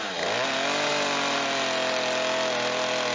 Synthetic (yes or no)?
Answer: no